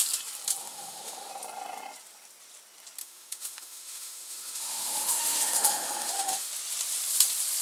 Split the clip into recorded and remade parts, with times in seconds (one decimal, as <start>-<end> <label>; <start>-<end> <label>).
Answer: 0.0-0.6 recorded; 0.6-1.3 remade; 1.3-3.0 recorded; 3.0-6.5 remade; 6.5-7.6 recorded